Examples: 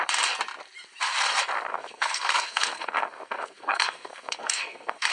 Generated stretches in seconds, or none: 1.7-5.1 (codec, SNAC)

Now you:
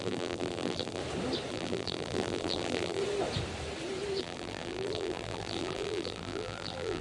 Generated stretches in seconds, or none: 0.0-1.0 (vocoder, BigVGAN v2); 1.5-3.0; 4.2-7.0